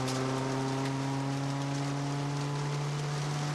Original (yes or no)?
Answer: yes